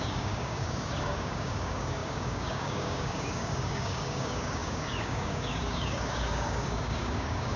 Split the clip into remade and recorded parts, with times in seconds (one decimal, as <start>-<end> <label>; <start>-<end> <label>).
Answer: 0.0-7.6 remade